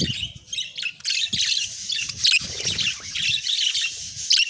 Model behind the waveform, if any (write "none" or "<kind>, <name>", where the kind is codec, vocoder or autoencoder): none